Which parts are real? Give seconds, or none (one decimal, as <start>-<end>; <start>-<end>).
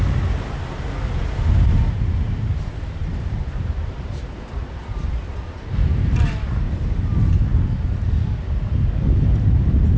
0.0-3.0; 6.3-10.0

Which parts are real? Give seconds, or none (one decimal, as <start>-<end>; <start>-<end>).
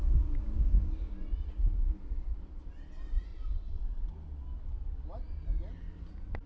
0.0-3.3; 4.1-6.5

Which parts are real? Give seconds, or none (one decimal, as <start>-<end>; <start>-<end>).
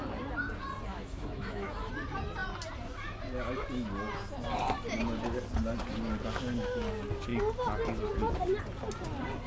0.0-0.9; 1.9-9.5